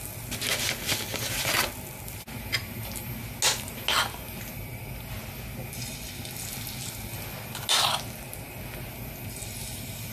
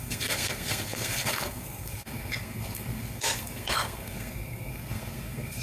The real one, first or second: first